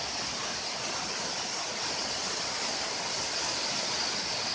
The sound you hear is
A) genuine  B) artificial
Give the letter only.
A